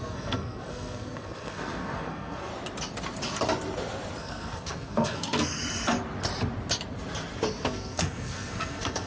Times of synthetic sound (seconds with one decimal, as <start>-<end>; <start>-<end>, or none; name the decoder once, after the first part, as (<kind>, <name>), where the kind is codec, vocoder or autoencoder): 0.0-2.5 (codec, SNAC); 4.2-5.6; 7.6-9.1